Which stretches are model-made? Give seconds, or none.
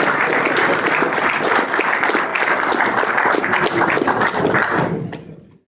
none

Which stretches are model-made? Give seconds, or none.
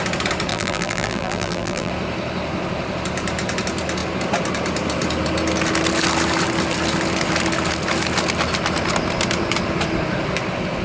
0.5-1.9 (vocoder, BigVGAN v2)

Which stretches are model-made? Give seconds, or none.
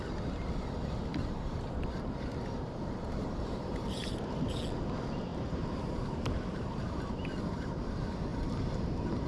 1.1-4.6 (vocoder, BigVGAN v2); 5.3-7.0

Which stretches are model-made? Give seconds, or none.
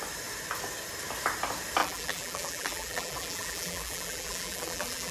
1.8-5.1 (vocoder, BigVGAN v2)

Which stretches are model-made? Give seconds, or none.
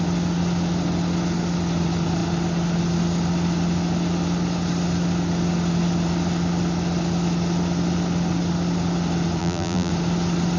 9.4-9.9 (vocoder, BigVGAN v2)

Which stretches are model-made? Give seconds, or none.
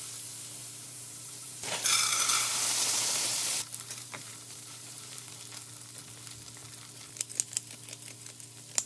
0.6-5.3 (vocoder, BigVGAN v2)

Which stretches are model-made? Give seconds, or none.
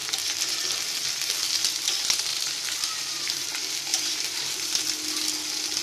2.3-3.5 (vocoder, BigVGAN v2); 3.9-4.4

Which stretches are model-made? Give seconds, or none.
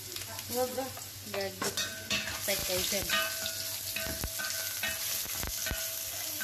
none